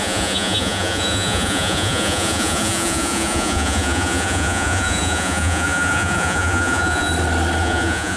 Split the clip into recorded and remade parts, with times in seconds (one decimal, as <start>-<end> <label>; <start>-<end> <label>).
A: 0.0-7.1 remade; 7.1-7.6 recorded; 7.6-8.2 remade